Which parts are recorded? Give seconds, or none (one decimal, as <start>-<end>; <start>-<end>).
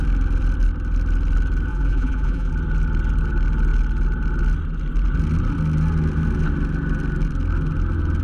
0.0-1.7; 2.5-8.2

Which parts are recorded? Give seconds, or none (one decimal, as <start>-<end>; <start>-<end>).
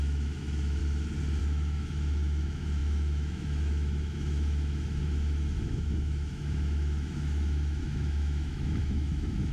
0.8-1.4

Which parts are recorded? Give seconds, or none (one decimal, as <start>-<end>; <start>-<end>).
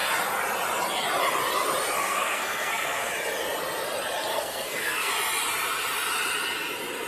0.0-2.0; 3.1-4.3; 5.1-7.1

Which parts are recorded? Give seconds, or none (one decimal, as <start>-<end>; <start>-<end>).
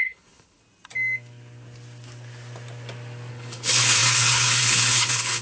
0.6-3.3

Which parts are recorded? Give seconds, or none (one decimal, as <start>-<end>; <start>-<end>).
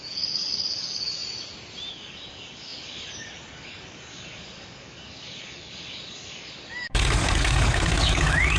1.2-1.9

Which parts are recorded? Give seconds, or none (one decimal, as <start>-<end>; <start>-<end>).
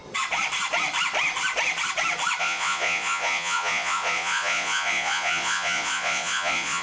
0.0-2.4